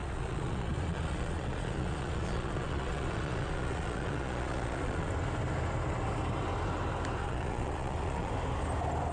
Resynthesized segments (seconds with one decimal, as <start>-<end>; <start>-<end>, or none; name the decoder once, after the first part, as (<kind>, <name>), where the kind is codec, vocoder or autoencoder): 0.0-5.1 (vocoder, Vocos); 7.2-8.3